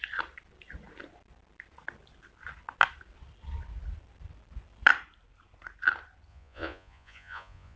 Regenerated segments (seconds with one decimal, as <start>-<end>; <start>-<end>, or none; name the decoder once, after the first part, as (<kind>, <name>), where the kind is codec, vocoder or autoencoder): 6.3-7.8 (vocoder, Vocos)